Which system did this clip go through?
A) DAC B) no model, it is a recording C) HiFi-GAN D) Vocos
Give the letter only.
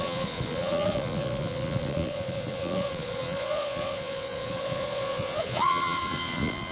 D